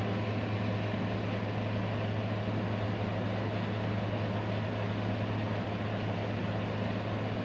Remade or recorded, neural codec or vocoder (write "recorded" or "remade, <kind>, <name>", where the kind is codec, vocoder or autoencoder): recorded